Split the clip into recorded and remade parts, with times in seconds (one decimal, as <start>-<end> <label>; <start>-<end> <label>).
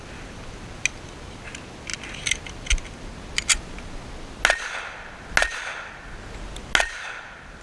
0.0-7.6 recorded